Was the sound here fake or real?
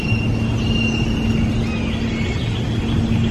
real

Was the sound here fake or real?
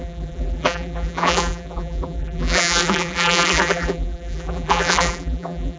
fake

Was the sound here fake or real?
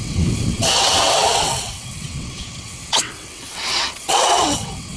fake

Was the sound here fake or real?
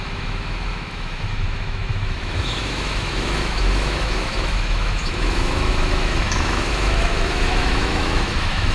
fake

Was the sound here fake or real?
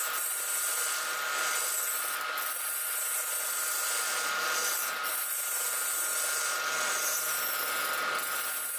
real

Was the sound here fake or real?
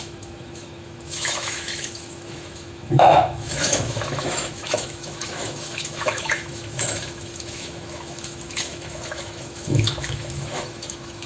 fake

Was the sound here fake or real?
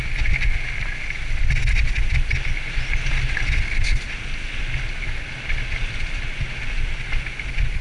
real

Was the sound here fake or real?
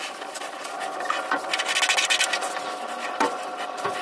real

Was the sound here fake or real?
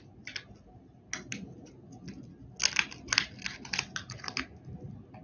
real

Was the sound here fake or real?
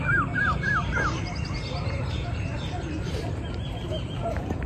fake